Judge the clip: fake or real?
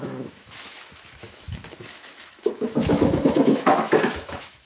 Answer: fake